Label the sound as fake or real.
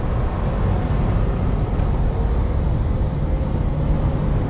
real